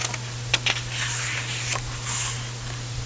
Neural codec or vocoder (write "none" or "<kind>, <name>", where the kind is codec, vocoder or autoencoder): none